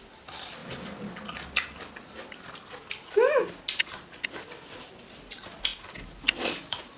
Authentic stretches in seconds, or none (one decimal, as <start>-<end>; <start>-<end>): 0.0-7.0